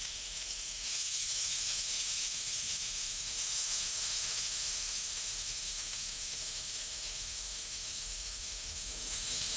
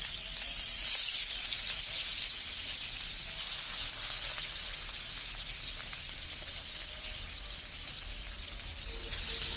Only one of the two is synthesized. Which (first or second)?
first